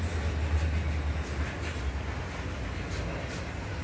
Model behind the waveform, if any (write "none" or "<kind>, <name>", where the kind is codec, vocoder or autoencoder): none